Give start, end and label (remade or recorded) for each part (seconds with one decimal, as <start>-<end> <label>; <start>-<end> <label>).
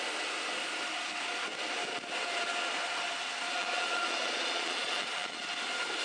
0.0-3.5 recorded; 3.5-5.4 remade; 5.4-6.0 recorded